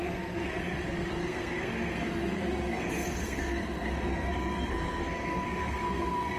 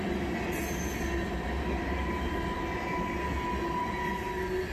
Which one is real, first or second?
second